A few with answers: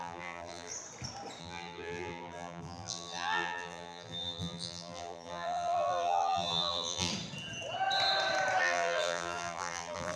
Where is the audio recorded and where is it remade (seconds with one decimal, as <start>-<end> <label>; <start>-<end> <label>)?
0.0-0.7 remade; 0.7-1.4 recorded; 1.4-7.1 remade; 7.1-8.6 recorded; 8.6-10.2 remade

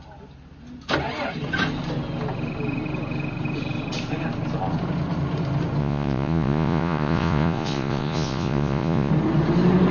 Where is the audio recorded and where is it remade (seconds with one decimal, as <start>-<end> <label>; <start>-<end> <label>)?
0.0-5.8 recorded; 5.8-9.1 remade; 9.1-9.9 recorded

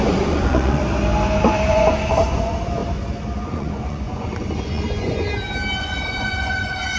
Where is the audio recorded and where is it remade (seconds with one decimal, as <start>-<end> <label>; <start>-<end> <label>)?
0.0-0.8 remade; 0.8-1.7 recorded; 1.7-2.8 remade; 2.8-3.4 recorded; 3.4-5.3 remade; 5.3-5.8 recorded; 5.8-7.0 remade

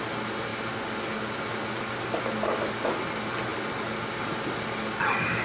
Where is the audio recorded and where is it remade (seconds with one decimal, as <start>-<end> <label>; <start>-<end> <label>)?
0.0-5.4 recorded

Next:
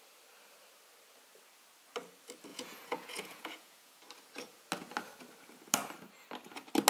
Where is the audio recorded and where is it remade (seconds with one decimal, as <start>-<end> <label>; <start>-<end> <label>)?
0.0-2.5 recorded; 2.5-4.0 remade; 4.0-6.9 recorded

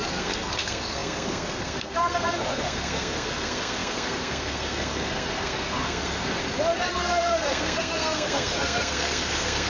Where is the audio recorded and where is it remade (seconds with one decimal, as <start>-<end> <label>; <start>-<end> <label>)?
0.0-6.4 remade; 6.4-6.9 recorded; 6.9-9.7 remade

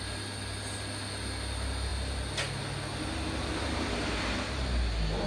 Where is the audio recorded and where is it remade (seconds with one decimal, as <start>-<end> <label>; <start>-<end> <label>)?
0.0-5.3 recorded